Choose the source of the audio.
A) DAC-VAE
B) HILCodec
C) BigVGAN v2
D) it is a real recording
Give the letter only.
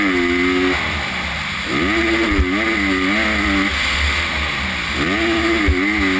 D